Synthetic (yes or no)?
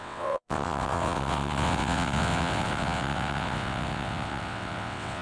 yes